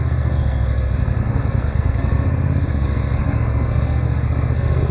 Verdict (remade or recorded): remade